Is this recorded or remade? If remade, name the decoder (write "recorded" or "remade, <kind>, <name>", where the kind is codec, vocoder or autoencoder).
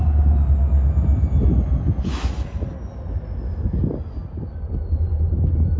recorded